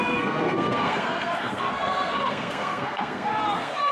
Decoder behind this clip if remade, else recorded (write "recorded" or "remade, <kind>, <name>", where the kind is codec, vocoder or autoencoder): remade, codec, SNAC